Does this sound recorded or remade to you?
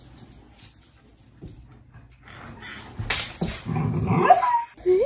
recorded